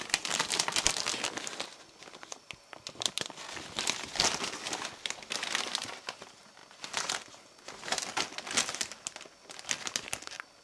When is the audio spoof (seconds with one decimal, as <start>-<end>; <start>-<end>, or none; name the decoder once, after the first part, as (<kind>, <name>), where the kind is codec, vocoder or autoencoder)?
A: none